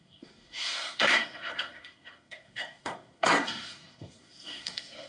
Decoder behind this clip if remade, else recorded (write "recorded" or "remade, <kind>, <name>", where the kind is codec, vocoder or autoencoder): remade, codec, SNAC